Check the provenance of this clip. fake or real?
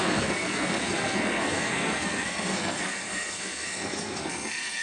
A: fake